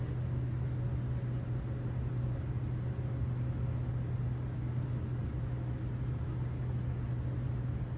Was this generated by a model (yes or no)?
no